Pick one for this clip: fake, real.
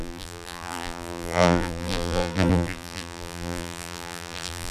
fake